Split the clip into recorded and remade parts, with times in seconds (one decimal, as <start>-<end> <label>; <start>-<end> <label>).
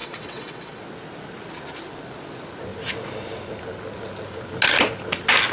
0.0-0.8 remade; 0.8-5.5 recorded